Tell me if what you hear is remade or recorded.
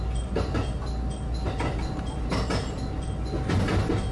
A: recorded